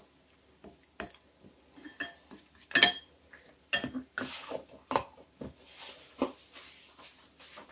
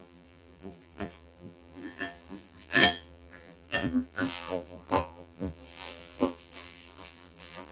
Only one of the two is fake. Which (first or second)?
second